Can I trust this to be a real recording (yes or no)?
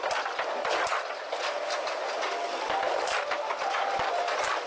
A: yes